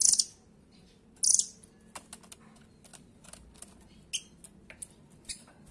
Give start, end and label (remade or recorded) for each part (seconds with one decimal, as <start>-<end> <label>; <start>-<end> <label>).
0.0-5.7 recorded